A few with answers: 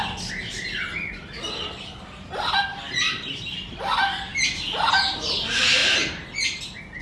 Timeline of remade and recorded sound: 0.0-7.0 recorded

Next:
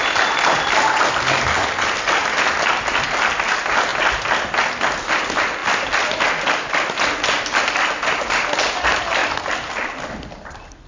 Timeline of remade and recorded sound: 0.0-2.2 recorded; 2.2-2.9 remade; 2.9-10.9 recorded

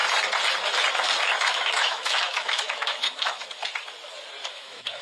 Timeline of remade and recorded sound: 0.0-1.5 recorded; 1.5-3.4 remade; 3.4-4.5 recorded; 4.5-5.0 remade

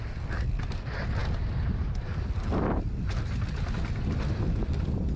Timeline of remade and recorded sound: 0.0-5.2 remade